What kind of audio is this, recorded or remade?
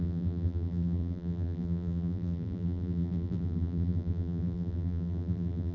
remade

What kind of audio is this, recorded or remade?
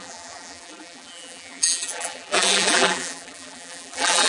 remade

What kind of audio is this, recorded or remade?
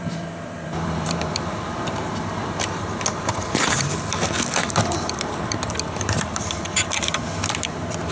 remade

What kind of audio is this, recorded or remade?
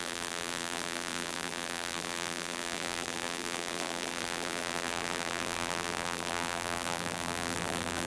remade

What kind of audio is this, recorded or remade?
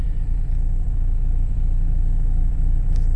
remade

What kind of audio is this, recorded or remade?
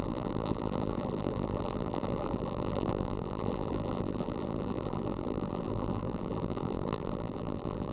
remade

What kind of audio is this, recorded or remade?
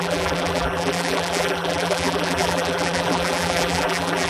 remade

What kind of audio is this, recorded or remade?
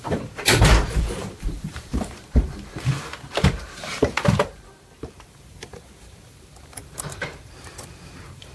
remade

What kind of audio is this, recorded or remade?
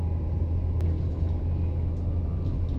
recorded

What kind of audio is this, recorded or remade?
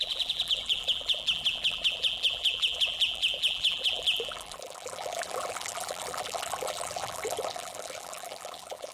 remade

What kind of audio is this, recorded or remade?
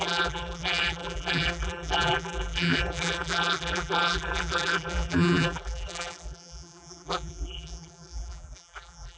remade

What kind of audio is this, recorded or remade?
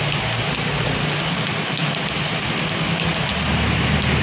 recorded